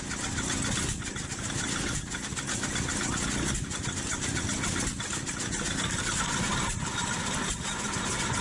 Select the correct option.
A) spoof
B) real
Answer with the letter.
B